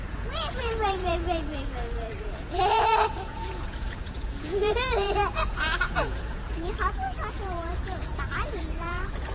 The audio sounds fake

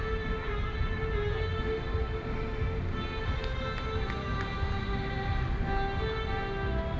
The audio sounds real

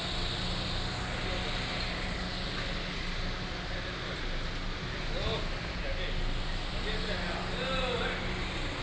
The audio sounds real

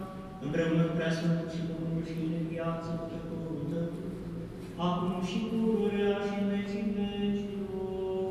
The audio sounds real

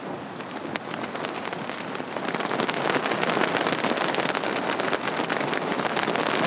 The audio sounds real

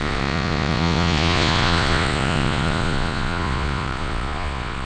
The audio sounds fake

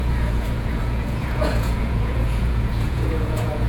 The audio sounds fake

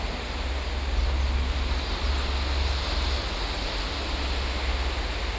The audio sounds real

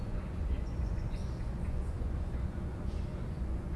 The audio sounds fake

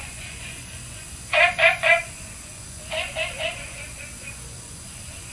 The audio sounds fake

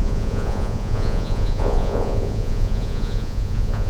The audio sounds fake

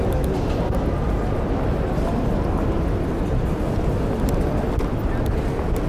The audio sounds real